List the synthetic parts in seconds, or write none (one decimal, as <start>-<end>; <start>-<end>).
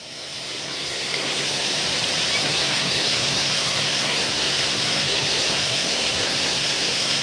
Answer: 0.0-1.7; 2.4-7.2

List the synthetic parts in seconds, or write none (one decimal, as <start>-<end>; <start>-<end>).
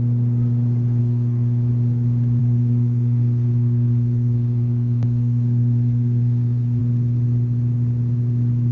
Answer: 1.0-1.7; 2.4-6.8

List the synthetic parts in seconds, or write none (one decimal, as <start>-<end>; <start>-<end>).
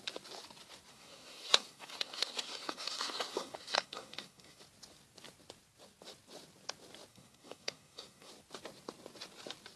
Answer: 0.9-4.6; 7.1-8.3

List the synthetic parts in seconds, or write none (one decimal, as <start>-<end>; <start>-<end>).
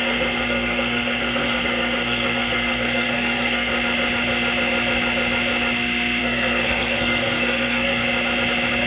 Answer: 0.0-3.7; 6.2-8.0